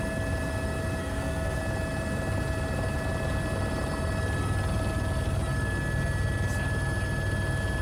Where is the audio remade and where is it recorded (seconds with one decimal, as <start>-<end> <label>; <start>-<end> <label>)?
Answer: 0.0-1.0 recorded; 1.0-1.6 remade; 1.6-7.8 recorded